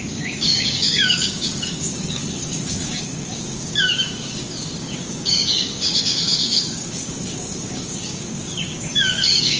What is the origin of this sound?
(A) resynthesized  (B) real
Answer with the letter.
A